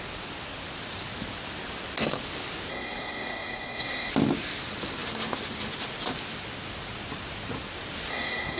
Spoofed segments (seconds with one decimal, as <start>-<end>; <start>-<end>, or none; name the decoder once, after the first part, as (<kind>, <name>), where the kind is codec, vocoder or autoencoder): 2.7-4.1 (codec, SNAC); 8.1-8.6